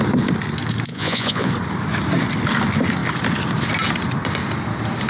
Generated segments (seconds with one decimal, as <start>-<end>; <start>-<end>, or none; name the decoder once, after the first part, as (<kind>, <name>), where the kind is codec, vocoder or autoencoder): 0.9-1.5 (vocoder, Vocos)